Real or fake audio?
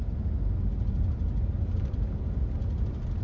real